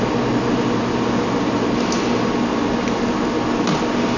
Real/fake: real